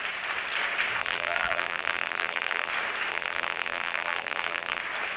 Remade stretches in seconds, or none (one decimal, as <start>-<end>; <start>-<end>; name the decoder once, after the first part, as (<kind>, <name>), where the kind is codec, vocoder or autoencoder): 1.0-2.7 (vocoder, BigVGAN v2); 3.1-4.8